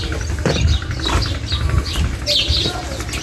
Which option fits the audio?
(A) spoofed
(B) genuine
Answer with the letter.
B